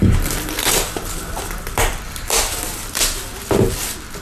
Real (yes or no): no